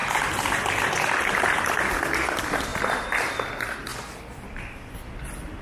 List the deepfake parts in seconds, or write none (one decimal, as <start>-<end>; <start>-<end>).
2.7-3.3; 3.9-4.9